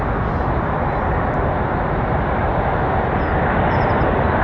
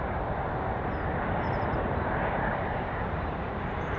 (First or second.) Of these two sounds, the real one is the first